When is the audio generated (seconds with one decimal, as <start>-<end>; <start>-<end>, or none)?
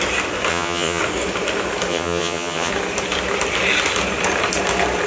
0.5-1.0; 1.9-2.7